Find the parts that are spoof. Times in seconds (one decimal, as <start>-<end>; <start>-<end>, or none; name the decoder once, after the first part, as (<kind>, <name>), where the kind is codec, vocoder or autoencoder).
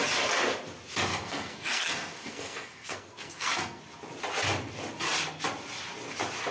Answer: 1.1-3.8 (codec, SNAC)